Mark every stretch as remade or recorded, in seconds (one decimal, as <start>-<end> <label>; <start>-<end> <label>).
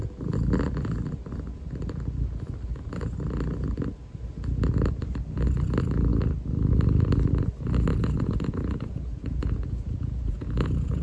0.0-7.9 recorded; 7.9-11.0 remade